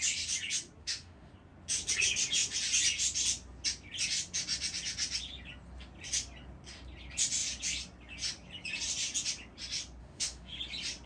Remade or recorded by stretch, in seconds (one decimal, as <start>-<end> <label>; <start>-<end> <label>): 0.0-0.8 recorded; 0.8-1.3 remade; 1.3-10.0 recorded; 10.0-10.6 remade; 10.6-11.1 recorded